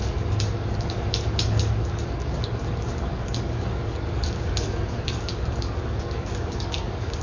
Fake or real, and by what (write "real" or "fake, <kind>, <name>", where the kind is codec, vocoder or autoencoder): fake, codec, DAC